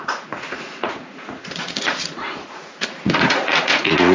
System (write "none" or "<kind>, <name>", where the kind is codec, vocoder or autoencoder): vocoder, Vocos